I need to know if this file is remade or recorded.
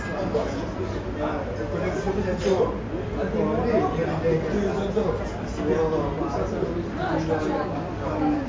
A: recorded